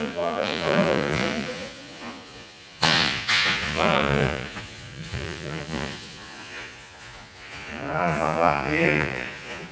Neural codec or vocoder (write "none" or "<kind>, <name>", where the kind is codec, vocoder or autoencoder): vocoder, Vocos